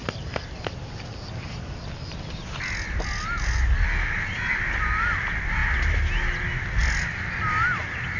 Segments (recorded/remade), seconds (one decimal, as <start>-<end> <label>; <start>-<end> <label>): 0.0-8.2 recorded